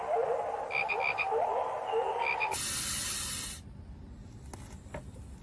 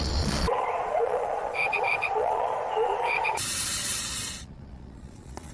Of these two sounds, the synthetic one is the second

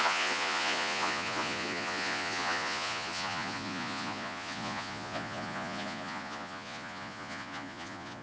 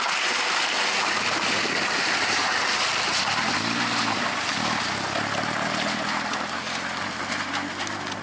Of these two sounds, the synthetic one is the first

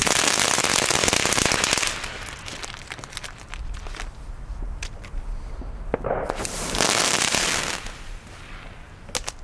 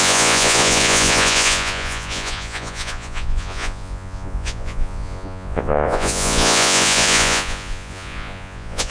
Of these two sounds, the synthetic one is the second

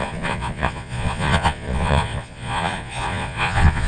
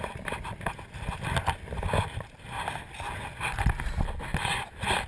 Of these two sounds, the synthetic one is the first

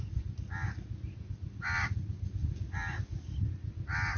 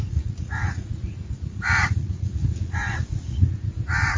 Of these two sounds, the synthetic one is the second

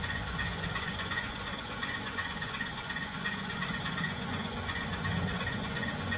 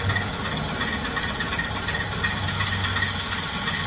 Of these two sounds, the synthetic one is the first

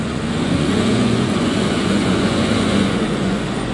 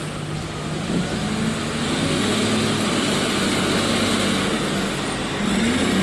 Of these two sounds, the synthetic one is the first